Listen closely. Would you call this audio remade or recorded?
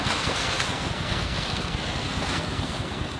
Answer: remade